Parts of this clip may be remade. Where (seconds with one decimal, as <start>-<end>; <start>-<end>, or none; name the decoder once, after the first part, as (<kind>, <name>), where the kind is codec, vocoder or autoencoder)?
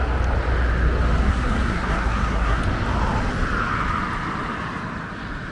1.3-2.6 (codec, SNAC)